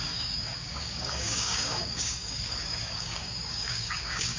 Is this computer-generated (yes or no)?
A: yes